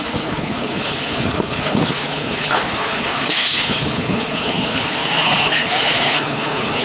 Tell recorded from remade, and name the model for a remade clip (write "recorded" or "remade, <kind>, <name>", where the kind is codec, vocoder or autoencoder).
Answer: remade, codec, HILCodec